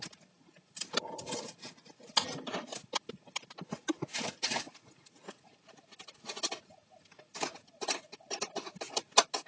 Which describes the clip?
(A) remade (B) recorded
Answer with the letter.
B